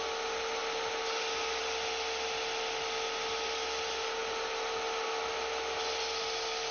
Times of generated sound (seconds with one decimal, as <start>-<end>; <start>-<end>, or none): none